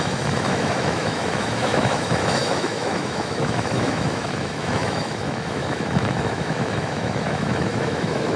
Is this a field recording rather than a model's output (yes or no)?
no